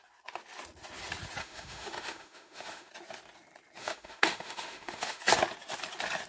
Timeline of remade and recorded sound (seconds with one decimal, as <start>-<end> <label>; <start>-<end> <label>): 0.0-1.4 recorded; 1.4-2.9 remade; 2.9-3.8 recorded; 3.8-5.2 remade; 5.2-6.3 recorded